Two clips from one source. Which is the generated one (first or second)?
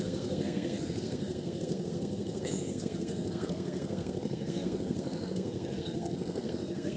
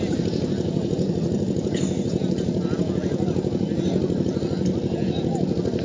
first